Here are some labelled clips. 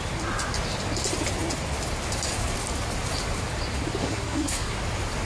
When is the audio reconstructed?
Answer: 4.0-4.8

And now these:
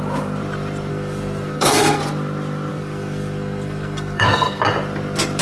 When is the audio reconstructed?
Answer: 0.9-2.0; 2.7-4.6

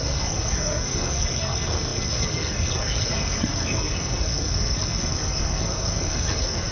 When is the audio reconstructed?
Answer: 0.0-6.7

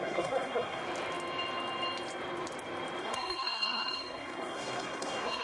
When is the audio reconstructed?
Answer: 0.0-0.8; 3.0-5.4

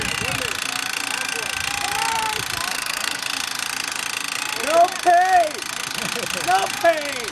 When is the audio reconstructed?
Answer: 2.7-3.2

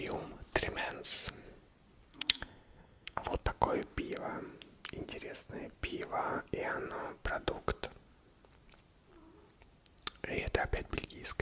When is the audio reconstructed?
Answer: 2.1-3.4

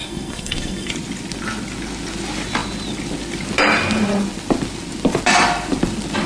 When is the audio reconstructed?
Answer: 0.0-0.9

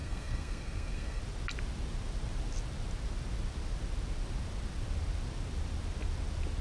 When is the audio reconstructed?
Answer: 0.0-1.2